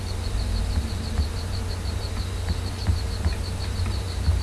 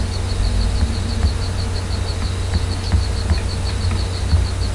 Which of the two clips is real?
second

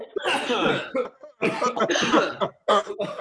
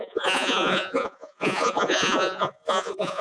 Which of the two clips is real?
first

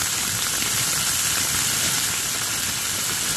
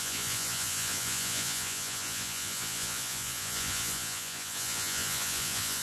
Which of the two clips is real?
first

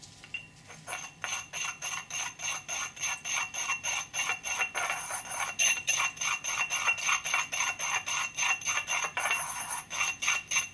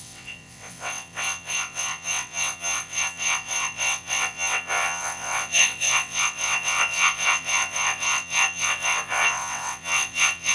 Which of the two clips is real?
first